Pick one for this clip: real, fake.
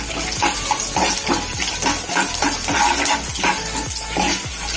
real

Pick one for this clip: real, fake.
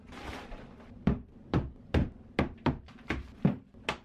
real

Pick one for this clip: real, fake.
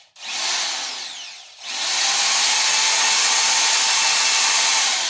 real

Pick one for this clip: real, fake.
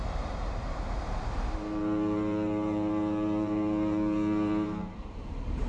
fake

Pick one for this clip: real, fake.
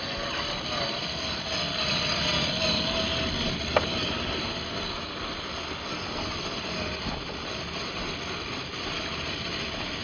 real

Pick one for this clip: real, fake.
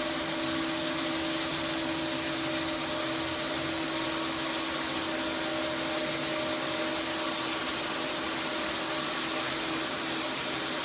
real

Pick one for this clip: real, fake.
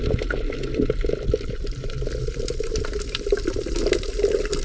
fake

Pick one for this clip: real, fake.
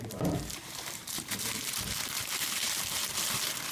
fake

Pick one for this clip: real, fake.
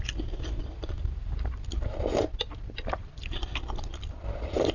fake